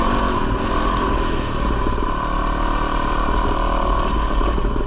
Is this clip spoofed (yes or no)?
no